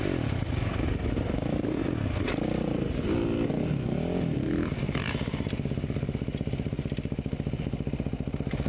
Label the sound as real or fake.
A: real